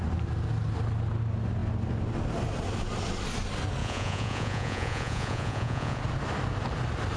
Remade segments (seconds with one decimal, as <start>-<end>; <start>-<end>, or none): 3.8-6.0